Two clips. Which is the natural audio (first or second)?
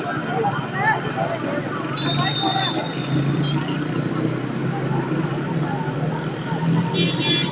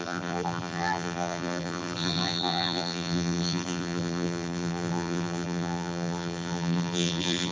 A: first